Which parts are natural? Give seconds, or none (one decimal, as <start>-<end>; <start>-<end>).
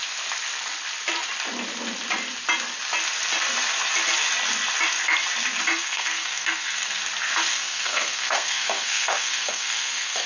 0.0-5.8; 7.0-7.5